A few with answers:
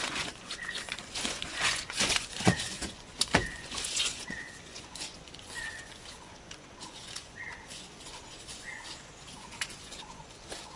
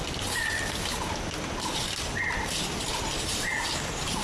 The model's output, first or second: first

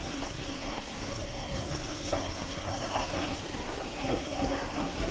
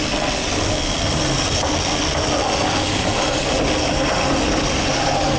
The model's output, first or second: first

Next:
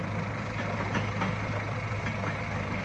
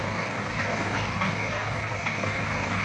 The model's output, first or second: second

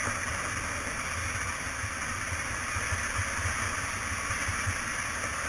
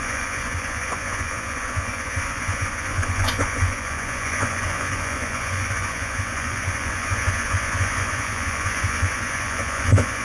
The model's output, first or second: second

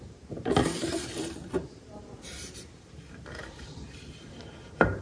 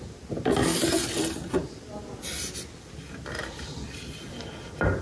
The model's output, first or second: first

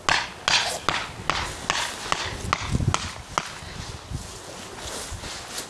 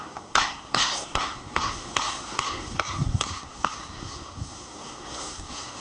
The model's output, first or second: second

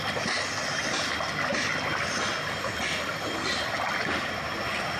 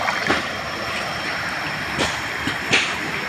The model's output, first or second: second